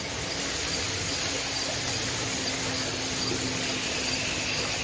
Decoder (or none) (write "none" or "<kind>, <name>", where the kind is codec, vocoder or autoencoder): none